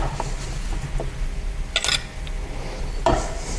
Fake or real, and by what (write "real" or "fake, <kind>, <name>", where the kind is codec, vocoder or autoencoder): real